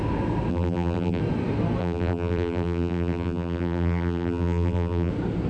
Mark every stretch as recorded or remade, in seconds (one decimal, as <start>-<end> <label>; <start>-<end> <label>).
0.0-0.5 recorded; 0.5-1.2 remade; 1.2-1.8 recorded; 1.8-5.1 remade; 5.1-5.5 recorded